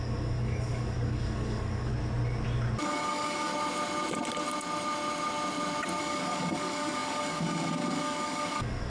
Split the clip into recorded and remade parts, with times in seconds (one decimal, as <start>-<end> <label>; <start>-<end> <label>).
0.0-1.9 remade; 1.9-2.8 recorded; 2.8-3.5 remade; 3.5-6.0 recorded; 6.0-8.9 remade